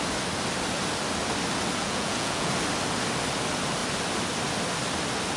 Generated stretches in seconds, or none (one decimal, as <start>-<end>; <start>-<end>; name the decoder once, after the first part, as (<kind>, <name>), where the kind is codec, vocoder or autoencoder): 1.8-2.5 (vocoder, Vocos)